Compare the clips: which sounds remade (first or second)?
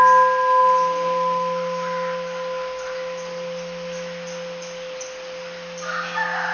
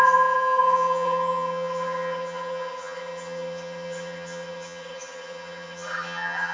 second